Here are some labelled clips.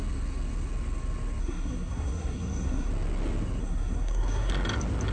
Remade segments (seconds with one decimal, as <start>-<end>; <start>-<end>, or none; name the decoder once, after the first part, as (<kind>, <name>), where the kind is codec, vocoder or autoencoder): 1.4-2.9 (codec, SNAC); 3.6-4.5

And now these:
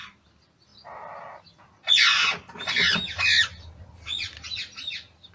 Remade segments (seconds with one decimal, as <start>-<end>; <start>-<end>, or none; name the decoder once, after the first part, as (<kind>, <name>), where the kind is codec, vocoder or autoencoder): none

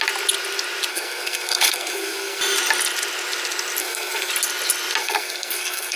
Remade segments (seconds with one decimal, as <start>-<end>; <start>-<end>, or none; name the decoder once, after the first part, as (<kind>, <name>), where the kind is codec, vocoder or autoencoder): 0.9-2.4 (codec, SNAC); 3.8-4.3; 5.0-6.0

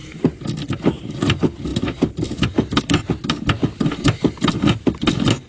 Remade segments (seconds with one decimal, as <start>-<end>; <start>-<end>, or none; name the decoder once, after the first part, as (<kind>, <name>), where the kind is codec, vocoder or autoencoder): none

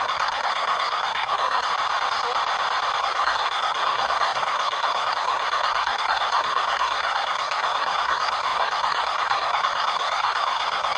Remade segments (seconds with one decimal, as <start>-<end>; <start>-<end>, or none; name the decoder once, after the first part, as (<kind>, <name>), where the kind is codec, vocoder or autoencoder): 0.0-1.7 (codec, SNAC); 3.0-11.0

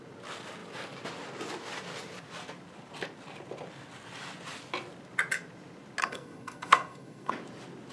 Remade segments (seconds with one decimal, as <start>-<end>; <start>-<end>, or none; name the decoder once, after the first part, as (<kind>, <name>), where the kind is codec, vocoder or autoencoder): 6.0-7.3 (codec, SNAC)